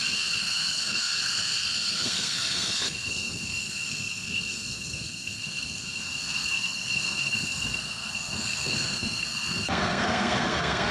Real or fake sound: fake